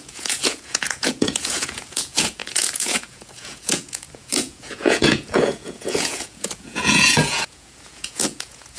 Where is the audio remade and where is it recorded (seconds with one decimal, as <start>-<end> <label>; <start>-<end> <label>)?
0.0-8.8 remade